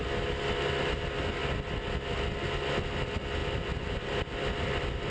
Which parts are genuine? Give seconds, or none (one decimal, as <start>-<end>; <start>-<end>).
0.0-5.1